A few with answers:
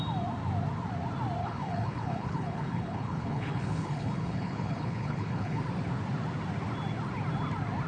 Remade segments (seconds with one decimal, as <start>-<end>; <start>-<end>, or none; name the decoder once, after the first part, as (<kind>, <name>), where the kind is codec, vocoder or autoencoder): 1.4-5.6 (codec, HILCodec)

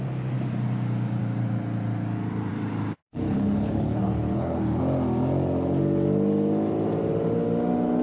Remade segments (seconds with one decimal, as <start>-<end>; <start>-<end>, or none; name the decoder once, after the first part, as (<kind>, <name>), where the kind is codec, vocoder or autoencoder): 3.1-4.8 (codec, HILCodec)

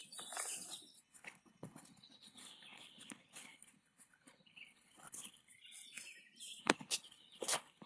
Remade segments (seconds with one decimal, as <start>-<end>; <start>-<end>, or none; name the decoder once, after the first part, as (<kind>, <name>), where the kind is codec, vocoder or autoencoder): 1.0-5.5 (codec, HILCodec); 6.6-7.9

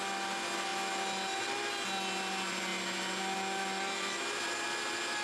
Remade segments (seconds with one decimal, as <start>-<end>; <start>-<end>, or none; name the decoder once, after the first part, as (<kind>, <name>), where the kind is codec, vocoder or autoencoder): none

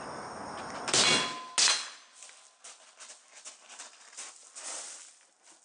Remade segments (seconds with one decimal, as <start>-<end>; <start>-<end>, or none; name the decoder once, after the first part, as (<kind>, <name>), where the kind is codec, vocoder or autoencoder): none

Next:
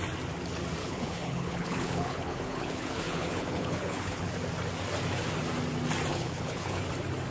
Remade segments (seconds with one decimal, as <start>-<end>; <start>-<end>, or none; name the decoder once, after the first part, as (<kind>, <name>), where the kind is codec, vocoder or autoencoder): 0.8-4.3 (codec, HILCodec); 6.1-6.8

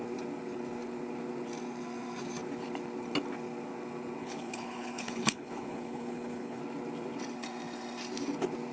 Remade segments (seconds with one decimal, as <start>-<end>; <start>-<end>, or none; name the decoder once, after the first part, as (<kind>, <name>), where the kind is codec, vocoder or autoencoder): 4.2-6.6 (codec, HILCodec)

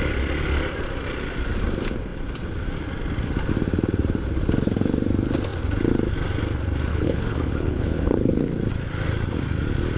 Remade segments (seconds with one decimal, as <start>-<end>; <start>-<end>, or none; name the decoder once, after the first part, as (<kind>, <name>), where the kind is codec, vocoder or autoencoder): 6.9-8.3 (codec, HILCodec)